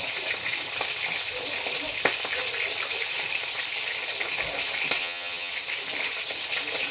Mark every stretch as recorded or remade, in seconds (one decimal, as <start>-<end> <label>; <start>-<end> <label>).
0.0-5.0 recorded; 5.0-5.5 remade; 5.5-6.9 recorded